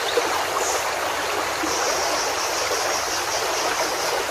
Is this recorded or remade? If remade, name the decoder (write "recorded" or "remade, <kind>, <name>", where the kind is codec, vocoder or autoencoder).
recorded